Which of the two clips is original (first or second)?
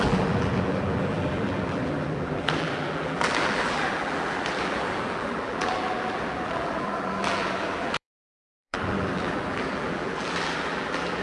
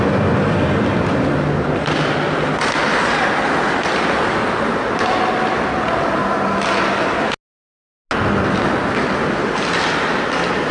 second